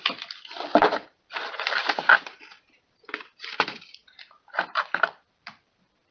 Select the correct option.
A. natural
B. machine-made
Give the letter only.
B